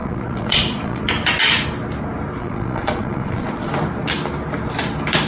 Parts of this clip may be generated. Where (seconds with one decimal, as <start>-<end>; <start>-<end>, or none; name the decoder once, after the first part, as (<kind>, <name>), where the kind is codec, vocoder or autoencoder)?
0.0-1.0 (vocoder, Vocos); 2.4-3.7